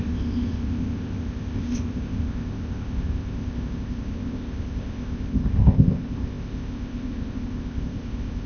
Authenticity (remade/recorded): remade